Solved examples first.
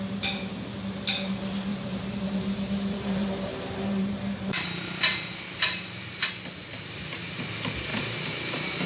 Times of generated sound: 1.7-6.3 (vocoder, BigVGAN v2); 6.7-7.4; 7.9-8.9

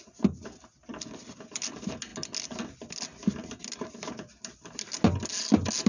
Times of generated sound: none

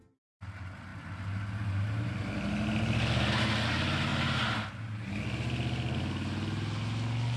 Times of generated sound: none

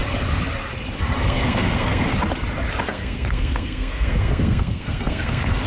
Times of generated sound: 1.2-2.1 (codec, SNAC); 2.9-5.7

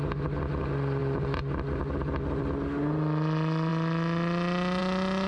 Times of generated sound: none

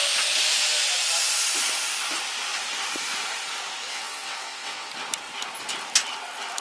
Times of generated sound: 3.9-4.9 (vocoder, WaveNeXt)

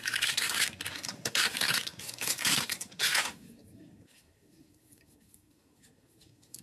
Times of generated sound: 0.0-6.6 (codec, SNAC)

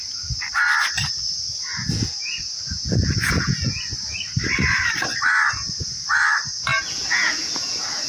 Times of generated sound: 1.7-3.8 (vocoder, Vocos); 6.7-8.1